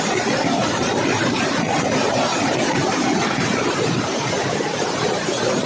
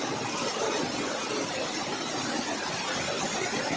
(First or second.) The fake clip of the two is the first